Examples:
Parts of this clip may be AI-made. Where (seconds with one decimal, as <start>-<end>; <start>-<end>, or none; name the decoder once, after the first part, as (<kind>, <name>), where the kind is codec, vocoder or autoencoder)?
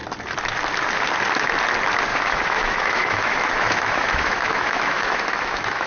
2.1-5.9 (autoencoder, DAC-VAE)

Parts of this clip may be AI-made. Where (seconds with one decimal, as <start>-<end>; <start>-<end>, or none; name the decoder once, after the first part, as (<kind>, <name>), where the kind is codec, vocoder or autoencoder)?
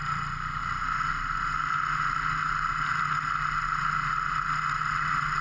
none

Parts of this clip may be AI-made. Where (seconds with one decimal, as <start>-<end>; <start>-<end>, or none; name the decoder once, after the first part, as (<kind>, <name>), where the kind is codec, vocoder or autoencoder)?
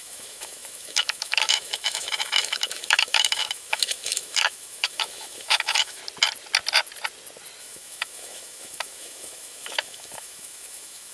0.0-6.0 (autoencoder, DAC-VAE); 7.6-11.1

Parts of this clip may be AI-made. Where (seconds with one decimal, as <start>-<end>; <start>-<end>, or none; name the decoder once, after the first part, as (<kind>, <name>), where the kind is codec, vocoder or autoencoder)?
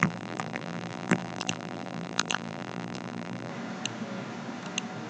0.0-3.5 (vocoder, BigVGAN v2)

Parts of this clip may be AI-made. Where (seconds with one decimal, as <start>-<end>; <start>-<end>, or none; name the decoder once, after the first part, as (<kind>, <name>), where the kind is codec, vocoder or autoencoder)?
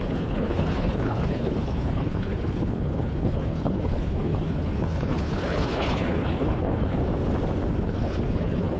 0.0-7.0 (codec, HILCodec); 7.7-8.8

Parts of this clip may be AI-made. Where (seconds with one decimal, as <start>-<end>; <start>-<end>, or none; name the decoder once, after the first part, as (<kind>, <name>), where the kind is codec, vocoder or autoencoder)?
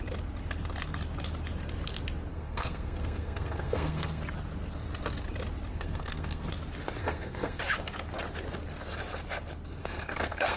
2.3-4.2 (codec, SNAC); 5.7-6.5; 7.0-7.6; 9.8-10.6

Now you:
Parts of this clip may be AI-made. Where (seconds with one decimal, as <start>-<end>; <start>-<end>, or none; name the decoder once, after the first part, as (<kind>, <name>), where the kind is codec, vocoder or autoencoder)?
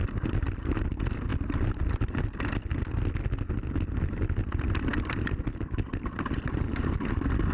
none